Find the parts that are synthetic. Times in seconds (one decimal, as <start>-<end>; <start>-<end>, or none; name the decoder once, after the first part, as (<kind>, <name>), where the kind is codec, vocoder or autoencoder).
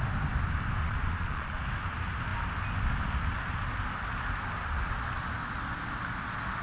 0.8-1.6 (vocoder, Vocos)